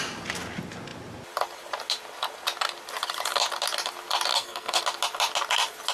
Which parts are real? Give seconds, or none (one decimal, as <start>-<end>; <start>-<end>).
0.0-4.3; 4.8-5.9